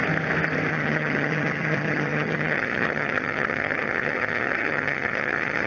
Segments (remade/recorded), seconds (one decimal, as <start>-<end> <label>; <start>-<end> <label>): 0.0-0.7 recorded; 0.7-5.7 remade